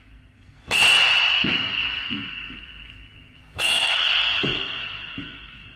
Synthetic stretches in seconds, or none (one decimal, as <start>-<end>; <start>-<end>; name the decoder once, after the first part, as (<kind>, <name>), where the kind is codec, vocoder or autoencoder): 0.0-0.8 (codec, SNAC); 1.3-5.8